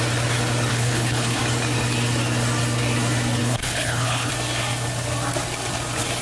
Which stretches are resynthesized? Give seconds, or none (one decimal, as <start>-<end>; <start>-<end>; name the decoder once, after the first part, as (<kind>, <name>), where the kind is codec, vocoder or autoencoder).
0.7-1.4 (codec, HILCodec); 3.4-4.3